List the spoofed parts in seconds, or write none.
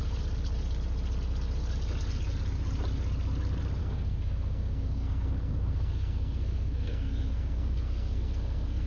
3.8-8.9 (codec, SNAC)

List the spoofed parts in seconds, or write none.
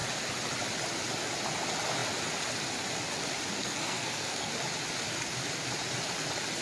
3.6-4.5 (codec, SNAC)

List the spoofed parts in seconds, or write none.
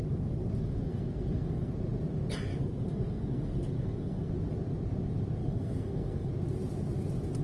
0.6-1.7 (codec, SNAC); 2.5-4.3; 5.4-6.3